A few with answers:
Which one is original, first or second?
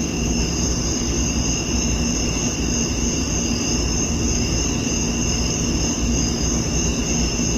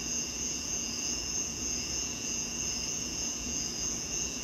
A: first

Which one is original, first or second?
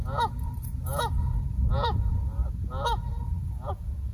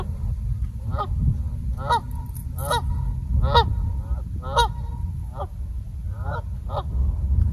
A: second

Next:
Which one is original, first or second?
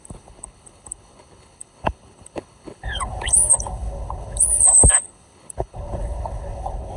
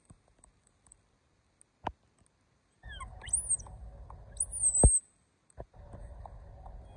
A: second